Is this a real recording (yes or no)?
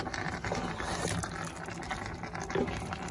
yes